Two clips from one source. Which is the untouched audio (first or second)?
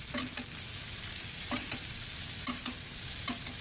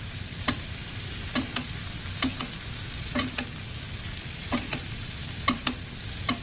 first